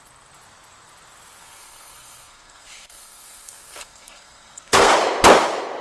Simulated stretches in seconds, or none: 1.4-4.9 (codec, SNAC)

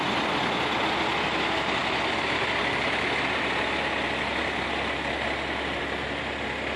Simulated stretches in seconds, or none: none

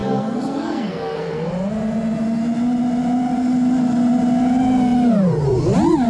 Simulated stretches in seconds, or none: 0.0-1.5 (codec, SNAC)

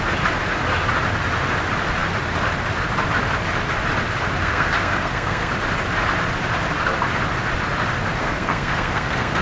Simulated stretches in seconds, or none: 4.4-5.5 (codec, SNAC); 8.2-9.4

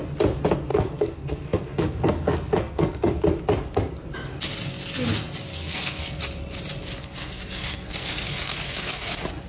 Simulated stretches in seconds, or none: 0.7-3.2 (codec, SNAC); 5.5-6.2; 7.0-9.1

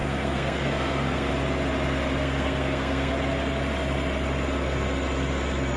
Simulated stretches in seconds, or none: 0.0-1.3 (codec, SNAC); 2.2-3.1

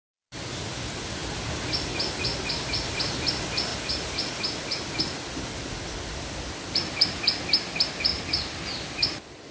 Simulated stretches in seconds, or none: none